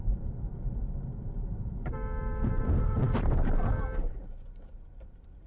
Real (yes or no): no